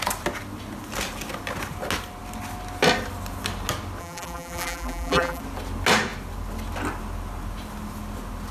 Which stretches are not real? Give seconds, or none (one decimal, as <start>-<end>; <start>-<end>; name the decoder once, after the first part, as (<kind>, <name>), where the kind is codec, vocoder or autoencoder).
4.0-5.4 (vocoder, BigVGAN v2)